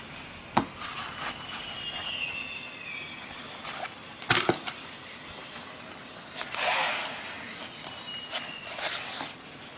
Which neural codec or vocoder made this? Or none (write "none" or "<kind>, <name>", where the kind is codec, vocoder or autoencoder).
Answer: none